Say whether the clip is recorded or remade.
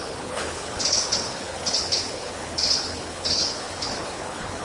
remade